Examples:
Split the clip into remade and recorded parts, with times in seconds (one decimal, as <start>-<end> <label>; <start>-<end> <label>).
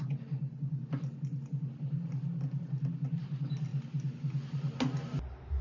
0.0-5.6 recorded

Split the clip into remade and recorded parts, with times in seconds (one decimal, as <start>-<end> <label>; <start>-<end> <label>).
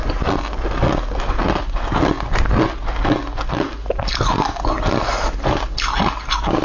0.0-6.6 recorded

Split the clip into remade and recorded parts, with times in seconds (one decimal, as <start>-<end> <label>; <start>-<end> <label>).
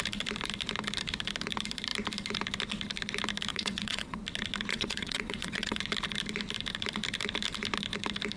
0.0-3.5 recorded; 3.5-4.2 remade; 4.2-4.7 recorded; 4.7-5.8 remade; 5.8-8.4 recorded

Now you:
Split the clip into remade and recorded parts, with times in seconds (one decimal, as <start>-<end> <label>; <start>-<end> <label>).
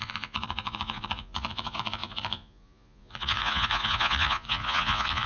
0.0-5.3 remade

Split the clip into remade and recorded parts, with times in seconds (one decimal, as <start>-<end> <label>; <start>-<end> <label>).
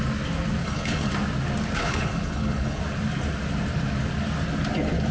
0.0-0.6 recorded; 0.6-1.1 remade; 1.1-1.8 recorded; 1.8-2.8 remade; 2.8-5.1 recorded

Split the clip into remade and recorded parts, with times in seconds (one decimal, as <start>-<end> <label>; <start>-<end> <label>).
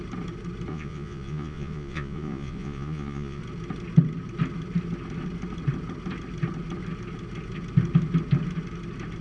0.0-0.7 recorded; 0.7-3.4 remade; 3.4-9.2 recorded